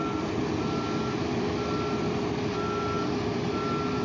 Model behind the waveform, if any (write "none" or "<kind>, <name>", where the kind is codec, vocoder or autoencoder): none